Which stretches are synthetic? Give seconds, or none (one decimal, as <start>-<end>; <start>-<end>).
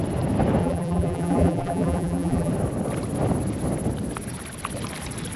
0.6-2.5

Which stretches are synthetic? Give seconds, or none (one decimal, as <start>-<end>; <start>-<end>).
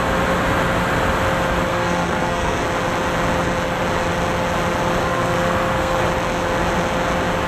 1.7-2.6; 5.0-6.0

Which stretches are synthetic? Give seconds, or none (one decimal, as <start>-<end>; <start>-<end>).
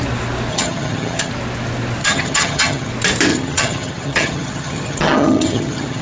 0.5-1.3; 2.0-2.9; 3.3-6.0